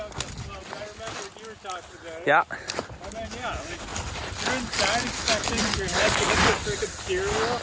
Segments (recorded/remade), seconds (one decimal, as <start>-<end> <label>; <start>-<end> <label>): 0.0-7.6 recorded